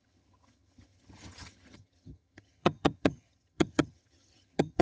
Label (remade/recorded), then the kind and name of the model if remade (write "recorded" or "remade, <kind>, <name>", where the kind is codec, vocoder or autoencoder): remade, vocoder, HiFi-GAN